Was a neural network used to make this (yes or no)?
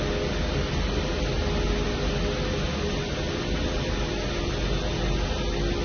no